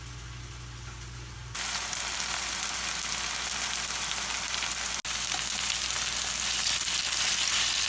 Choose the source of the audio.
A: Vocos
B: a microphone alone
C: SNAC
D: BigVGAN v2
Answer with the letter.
B